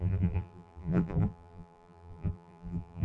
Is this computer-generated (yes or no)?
yes